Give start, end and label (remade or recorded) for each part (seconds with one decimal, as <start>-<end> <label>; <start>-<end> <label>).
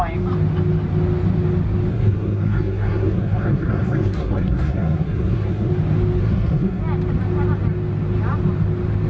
0.0-1.9 recorded; 1.9-5.7 remade; 5.7-6.2 recorded; 6.2-6.8 remade; 6.8-9.1 recorded